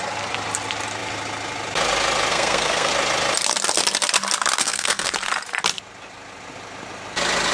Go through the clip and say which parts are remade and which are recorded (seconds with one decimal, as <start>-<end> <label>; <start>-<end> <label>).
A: 0.0-2.3 recorded; 2.3-2.9 remade; 2.9-4.6 recorded; 4.6-5.1 remade; 5.1-7.5 recorded